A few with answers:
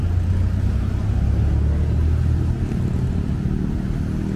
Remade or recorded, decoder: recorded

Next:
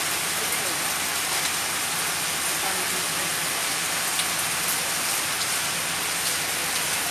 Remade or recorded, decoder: recorded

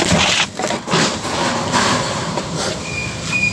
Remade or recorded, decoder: recorded